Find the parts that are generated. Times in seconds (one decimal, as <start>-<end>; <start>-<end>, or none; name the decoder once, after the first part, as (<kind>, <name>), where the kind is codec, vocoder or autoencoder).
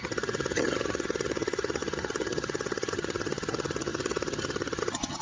0.0-5.2 (vocoder, HiFi-GAN)